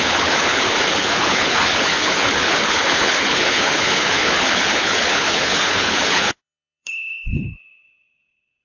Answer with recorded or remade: remade